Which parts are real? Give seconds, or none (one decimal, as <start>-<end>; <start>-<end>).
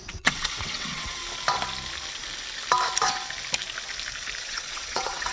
1.2-4.4